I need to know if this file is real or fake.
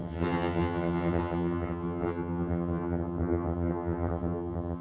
fake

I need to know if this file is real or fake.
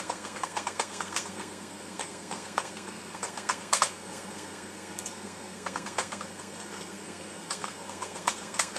fake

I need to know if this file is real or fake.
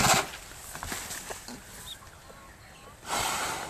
real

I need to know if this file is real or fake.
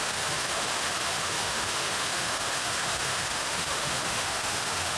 fake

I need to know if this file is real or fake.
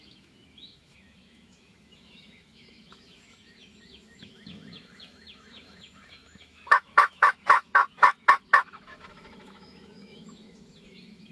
fake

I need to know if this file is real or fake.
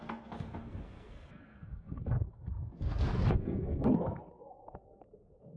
fake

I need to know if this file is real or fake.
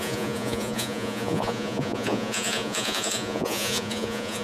fake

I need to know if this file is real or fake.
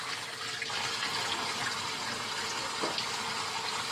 real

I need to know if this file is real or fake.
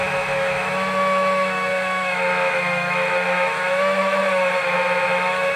fake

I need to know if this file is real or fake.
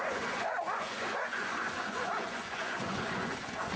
fake